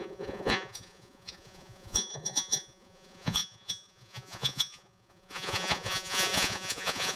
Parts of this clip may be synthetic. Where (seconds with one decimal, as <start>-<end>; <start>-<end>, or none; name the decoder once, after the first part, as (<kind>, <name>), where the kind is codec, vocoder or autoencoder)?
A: 0.0-7.2 (vocoder, Vocos)